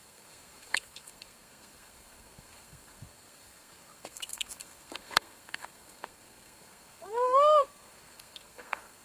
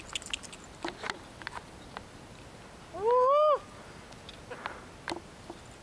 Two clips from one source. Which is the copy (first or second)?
first